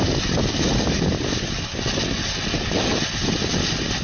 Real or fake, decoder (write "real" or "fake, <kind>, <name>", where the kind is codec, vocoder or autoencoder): real